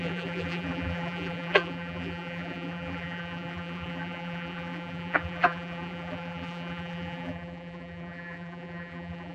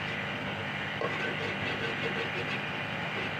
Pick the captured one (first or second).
second